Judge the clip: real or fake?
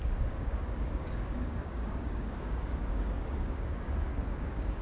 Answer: fake